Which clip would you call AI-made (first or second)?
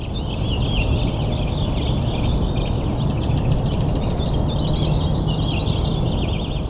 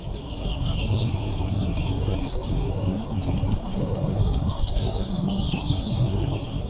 second